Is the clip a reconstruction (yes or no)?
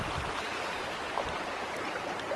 yes